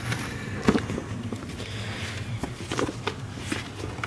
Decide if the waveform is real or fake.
fake